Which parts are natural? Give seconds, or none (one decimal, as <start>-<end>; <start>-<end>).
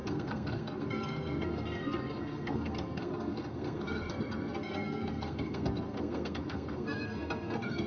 none